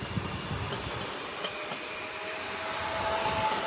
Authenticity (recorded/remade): recorded